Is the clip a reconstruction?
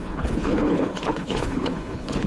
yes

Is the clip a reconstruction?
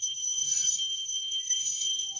yes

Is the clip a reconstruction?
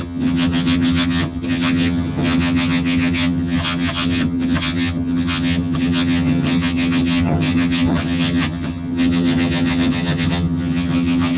yes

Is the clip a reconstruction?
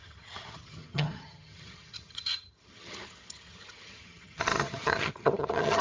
yes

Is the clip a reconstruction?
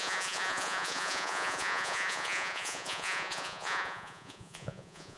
yes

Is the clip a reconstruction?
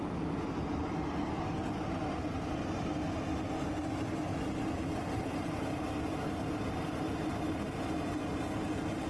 no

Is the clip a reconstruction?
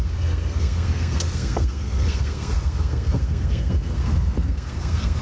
yes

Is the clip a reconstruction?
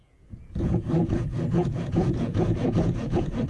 yes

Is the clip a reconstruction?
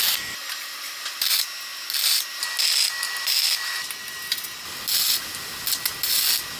no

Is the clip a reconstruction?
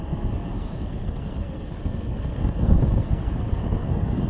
yes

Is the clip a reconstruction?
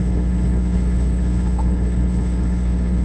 yes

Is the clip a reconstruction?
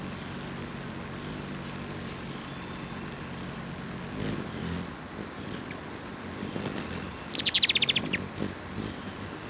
no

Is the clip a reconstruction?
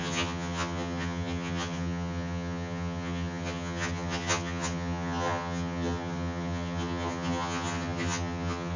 yes